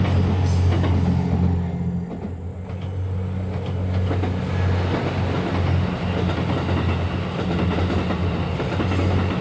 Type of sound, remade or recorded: recorded